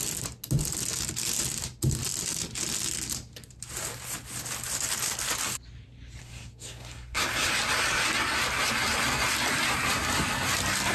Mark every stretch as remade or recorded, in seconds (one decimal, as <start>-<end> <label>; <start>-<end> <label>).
0.0-6.2 recorded; 6.2-7.5 remade; 7.5-10.9 recorded